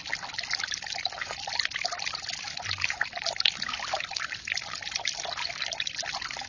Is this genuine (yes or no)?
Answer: yes